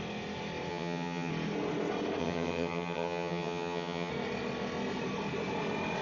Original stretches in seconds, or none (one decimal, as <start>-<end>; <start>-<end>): 0.0-0.7; 1.3-2.2; 4.1-6.0

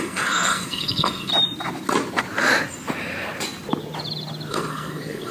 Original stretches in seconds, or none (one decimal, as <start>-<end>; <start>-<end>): 1.3-4.5

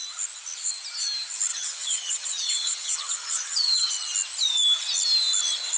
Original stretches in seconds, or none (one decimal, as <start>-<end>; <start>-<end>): 0.0-1.5; 3.9-5.8

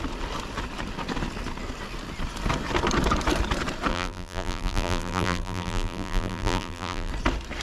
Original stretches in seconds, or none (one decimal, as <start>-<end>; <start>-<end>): 0.0-3.9; 7.1-7.6

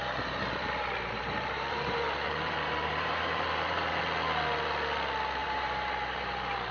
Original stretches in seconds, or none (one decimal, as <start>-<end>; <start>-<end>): 4.0-5.4

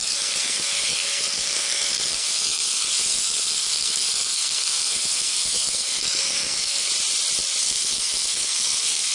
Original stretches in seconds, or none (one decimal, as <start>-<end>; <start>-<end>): 6.9-7.6